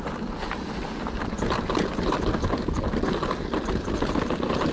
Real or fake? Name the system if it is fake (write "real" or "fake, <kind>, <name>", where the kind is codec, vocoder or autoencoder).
real